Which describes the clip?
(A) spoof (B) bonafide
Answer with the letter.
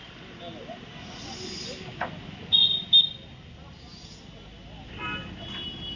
B